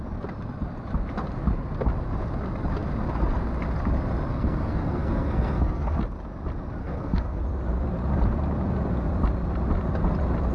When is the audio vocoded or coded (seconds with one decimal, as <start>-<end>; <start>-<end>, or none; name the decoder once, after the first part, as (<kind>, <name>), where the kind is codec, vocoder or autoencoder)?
4.3-6.0 (codec, SNAC); 6.8-7.4